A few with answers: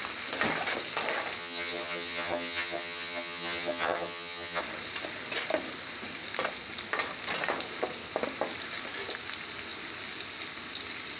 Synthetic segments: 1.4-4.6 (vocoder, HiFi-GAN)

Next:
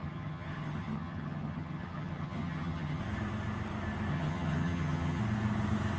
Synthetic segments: 0.0-3.0 (vocoder, HiFi-GAN); 4.1-5.2

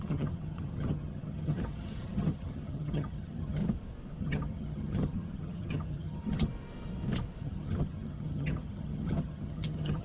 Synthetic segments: 0.0-3.6 (vocoder, HiFi-GAN); 4.2-6.5; 7.4-10.0

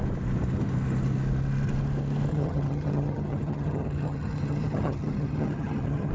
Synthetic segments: 2.3-6.1 (vocoder, HiFi-GAN)

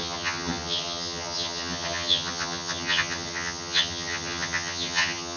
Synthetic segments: 0.0-5.4 (vocoder, HiFi-GAN)